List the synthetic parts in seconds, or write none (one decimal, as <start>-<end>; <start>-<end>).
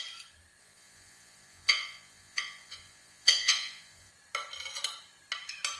0.6-4.1